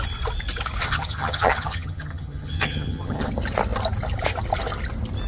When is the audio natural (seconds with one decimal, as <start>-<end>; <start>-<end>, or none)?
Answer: 0.0-0.8; 3.3-5.3